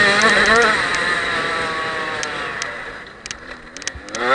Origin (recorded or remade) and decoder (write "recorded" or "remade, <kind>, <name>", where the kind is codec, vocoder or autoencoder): recorded